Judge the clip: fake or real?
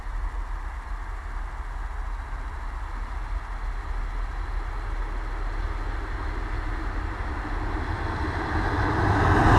real